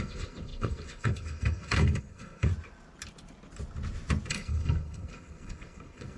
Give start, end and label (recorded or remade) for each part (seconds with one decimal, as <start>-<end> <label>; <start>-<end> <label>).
0.0-2.5 remade; 2.5-4.3 recorded; 4.3-6.2 remade